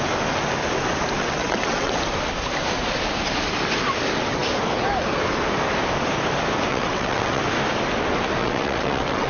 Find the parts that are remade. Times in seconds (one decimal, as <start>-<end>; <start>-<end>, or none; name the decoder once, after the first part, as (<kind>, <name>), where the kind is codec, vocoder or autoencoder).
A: 1.2-2.0 (vocoder, WaveNeXt); 6.7-7.4; 8.4-9.3